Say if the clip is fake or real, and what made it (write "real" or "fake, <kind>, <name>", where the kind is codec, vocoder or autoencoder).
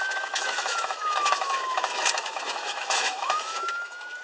fake, autoencoder, DAC-VAE